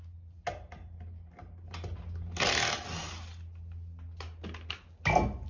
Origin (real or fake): real